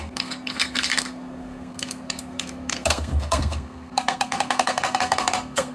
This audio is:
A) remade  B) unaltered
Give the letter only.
A